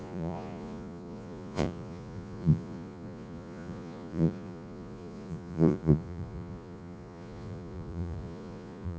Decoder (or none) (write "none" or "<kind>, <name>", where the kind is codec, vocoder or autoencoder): vocoder, Vocos